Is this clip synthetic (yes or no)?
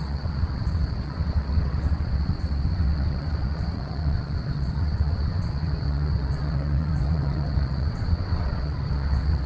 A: yes